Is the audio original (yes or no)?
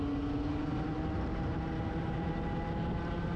yes